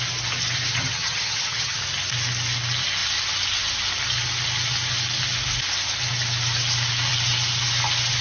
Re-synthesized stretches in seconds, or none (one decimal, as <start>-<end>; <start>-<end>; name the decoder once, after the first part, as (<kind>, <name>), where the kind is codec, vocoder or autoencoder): 0.7-1.8 (vocoder, HiFi-GAN)